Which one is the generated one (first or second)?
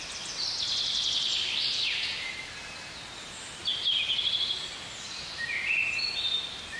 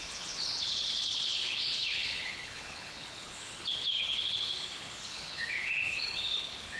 second